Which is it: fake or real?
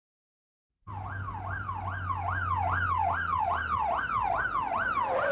real